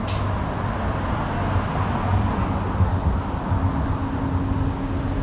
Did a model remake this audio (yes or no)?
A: no